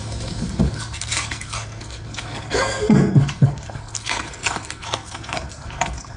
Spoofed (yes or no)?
yes